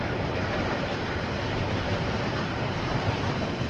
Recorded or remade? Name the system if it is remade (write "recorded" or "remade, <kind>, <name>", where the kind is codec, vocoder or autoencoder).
remade, vocoder, BigVGAN v2